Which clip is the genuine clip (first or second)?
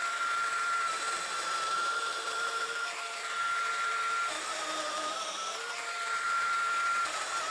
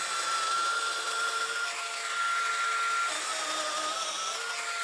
second